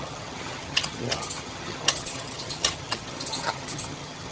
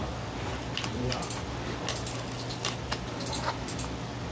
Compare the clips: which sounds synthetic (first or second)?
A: first